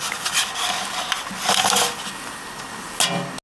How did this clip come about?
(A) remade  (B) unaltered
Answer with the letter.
B